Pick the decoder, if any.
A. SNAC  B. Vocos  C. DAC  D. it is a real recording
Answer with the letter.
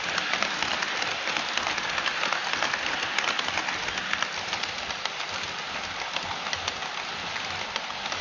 D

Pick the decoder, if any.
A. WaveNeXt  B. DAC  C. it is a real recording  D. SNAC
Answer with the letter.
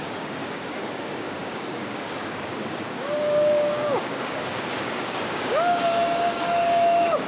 B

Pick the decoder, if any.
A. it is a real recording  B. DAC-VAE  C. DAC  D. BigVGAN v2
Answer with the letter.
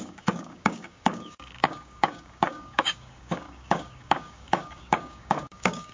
C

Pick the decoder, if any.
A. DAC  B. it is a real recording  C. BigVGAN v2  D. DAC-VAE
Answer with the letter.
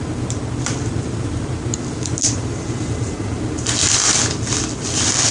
B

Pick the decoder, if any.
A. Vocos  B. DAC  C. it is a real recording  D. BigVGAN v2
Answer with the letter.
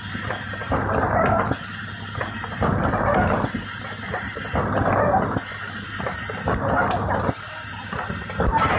C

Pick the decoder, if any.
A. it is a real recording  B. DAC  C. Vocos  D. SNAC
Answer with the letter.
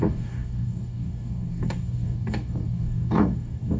B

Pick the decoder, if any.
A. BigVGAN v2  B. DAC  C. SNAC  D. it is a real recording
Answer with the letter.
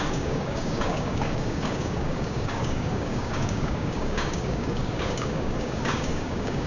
B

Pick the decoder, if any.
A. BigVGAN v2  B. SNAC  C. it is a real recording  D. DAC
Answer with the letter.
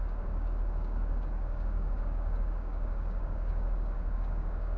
D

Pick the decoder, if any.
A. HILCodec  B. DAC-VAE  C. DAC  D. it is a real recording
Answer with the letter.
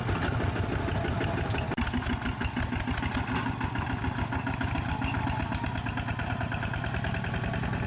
D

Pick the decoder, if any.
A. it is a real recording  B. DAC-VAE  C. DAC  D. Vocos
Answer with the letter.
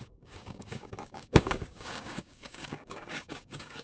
C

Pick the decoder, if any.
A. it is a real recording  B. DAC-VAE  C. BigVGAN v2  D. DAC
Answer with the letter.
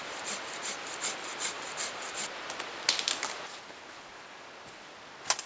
A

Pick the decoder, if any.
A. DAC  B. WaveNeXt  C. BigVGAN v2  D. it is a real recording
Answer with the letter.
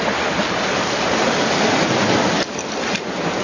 D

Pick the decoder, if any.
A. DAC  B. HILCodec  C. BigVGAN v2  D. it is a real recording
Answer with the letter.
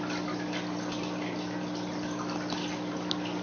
D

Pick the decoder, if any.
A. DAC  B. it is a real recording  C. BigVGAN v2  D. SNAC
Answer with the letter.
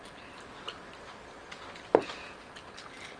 B